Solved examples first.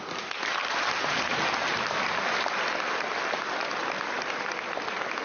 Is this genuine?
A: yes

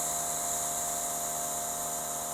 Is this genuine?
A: yes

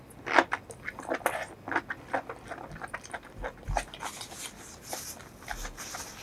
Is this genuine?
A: yes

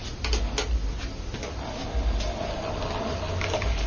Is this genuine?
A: yes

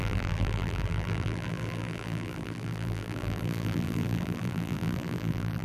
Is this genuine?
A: no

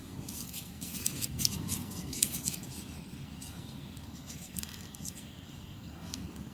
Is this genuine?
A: no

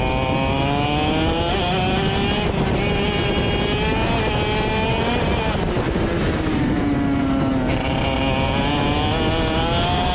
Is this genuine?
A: yes